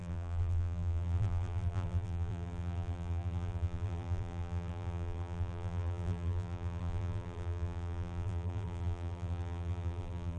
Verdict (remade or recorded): remade